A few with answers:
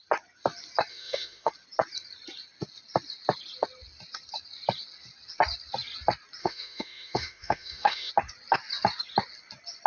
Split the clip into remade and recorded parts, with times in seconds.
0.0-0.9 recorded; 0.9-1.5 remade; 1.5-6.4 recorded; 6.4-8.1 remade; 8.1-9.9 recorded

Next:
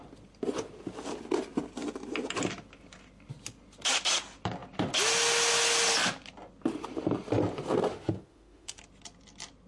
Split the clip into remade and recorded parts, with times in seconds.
0.0-7.9 recorded; 7.9-8.8 remade; 8.8-9.7 recorded

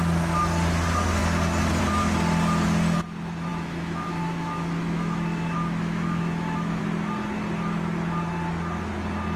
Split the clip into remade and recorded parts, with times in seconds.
0.0-3.5 recorded; 3.5-6.8 remade; 6.8-9.4 recorded